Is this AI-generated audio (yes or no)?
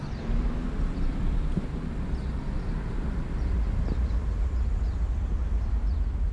no